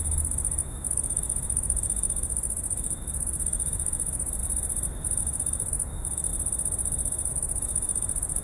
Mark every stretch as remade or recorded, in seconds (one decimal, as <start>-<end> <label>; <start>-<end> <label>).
0.0-4.4 remade; 4.4-5.2 recorded; 5.2-6.3 remade; 6.3-7.3 recorded; 7.3-8.4 remade